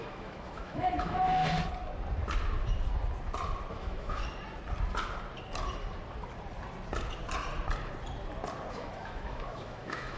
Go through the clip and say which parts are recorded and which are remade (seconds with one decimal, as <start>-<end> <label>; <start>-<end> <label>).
0.0-1.4 remade; 1.4-3.7 recorded; 3.7-4.2 remade; 4.2-8.7 recorded; 8.7-10.2 remade